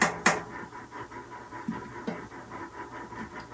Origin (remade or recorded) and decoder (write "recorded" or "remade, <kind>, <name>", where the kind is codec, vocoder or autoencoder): recorded